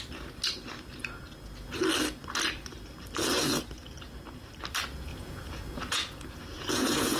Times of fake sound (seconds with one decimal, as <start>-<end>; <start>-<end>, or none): 5.1-7.2